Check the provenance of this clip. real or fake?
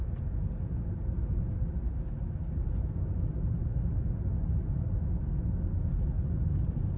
real